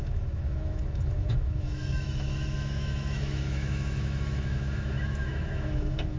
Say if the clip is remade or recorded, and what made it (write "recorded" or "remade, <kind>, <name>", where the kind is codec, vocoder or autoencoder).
remade, autoencoder, DAC-VAE